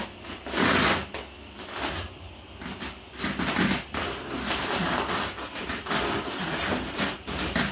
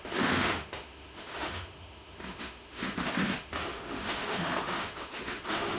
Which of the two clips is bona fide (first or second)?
first